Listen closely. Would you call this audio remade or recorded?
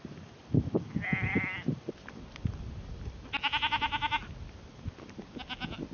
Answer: recorded